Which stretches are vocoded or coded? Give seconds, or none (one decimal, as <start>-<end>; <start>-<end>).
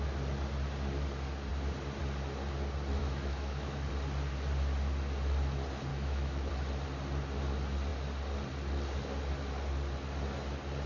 3.0-3.9; 5.9-6.5